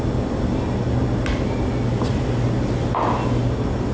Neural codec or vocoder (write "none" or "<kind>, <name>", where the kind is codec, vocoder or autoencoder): none